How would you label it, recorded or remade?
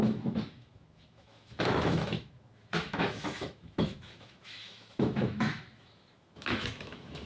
remade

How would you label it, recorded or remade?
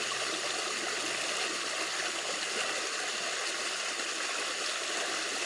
recorded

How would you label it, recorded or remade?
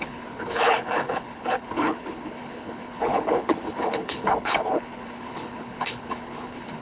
remade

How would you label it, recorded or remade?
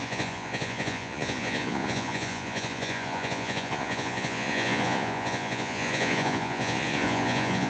remade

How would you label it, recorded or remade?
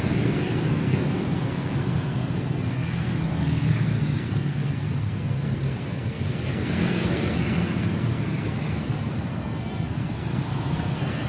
remade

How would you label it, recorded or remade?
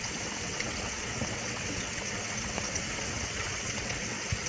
remade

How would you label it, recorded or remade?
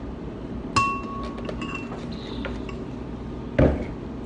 recorded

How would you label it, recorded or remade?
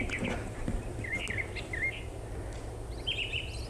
recorded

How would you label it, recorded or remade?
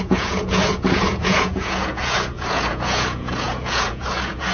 remade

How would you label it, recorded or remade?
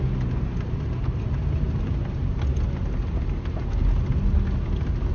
recorded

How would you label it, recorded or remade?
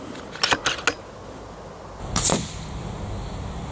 recorded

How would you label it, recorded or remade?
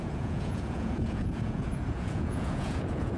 remade